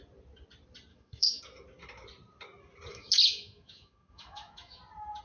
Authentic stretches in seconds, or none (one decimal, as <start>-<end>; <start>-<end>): 0.0-0.9; 1.4-2.9; 4.8-5.2